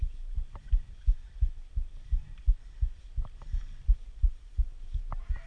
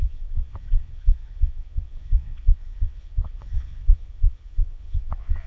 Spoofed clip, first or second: second